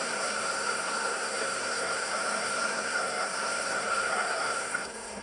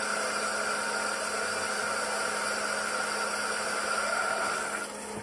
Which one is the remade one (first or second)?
first